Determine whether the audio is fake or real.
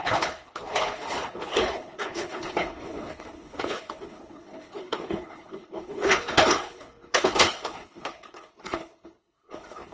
fake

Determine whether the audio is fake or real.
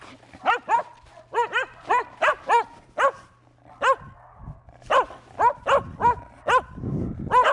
real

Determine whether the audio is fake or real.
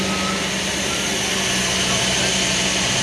real